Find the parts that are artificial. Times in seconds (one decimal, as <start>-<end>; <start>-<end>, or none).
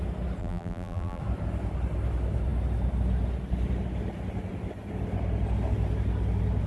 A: 0.4-1.2